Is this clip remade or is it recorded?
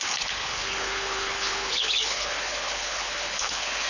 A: remade